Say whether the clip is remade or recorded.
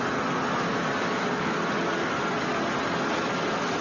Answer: recorded